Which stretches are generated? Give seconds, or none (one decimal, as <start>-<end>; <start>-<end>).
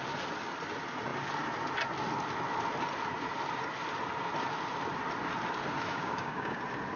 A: 5.9-6.6